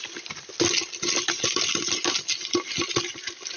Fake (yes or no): no